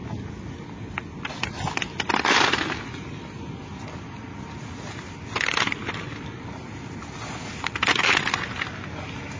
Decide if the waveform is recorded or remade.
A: recorded